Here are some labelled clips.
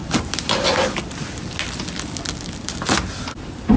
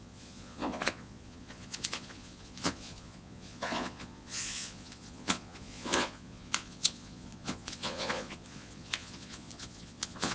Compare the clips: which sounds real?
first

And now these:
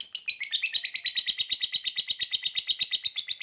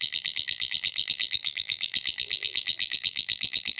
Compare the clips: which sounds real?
first